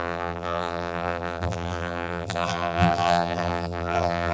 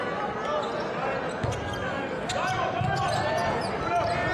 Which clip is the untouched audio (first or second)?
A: second